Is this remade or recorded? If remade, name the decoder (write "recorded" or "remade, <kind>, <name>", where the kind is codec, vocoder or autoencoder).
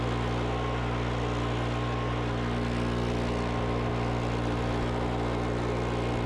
recorded